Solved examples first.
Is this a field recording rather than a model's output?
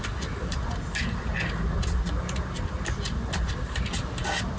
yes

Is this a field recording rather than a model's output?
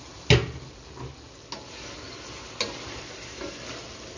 yes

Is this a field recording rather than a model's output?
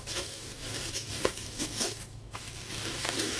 no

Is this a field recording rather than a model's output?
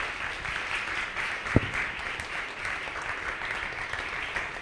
yes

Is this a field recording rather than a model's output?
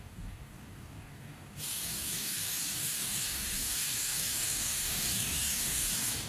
no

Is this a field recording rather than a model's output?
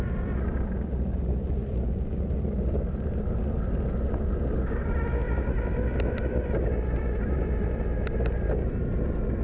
yes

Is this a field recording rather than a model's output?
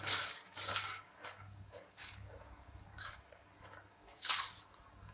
no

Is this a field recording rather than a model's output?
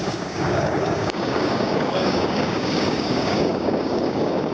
no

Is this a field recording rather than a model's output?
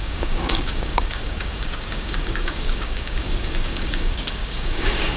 no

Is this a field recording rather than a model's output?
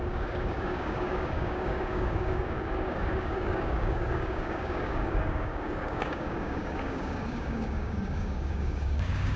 no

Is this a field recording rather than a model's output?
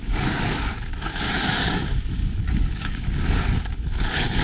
no